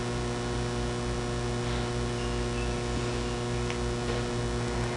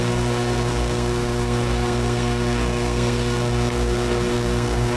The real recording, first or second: first